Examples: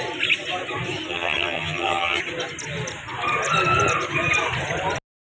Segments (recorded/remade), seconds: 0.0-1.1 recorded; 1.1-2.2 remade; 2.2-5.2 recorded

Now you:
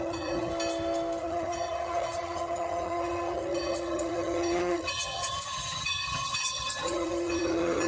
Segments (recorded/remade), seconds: 0.0-0.5 remade; 0.5-1.2 recorded; 1.2-7.9 remade

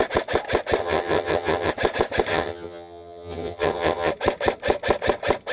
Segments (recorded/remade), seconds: 0.0-0.8 recorded; 0.8-1.7 remade; 1.7-2.3 recorded; 2.3-4.1 remade; 4.1-5.5 recorded

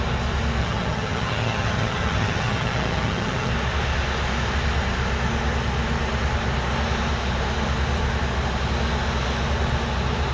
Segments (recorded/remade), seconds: 0.0-0.6 recorded; 0.6-3.5 remade; 3.5-10.3 recorded